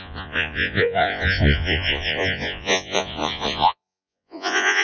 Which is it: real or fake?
fake